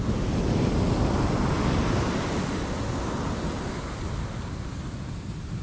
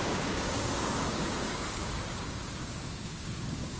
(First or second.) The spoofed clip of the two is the second